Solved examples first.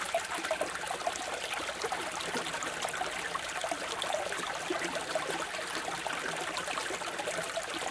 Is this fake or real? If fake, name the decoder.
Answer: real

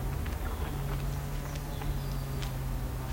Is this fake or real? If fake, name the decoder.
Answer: real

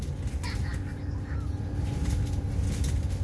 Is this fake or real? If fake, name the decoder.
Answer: real